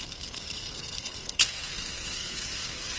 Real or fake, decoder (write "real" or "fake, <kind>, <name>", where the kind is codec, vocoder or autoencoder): fake, codec, SNAC